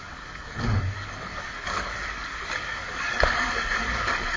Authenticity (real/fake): fake